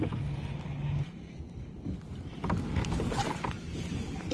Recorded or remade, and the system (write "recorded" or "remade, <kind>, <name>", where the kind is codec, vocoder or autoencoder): recorded